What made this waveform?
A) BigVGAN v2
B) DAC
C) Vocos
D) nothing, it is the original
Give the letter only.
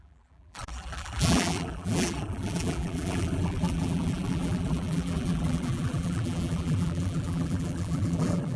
A